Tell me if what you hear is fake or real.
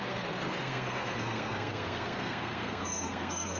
fake